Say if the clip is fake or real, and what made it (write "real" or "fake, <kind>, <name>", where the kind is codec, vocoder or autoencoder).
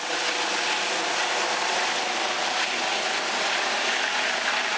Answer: real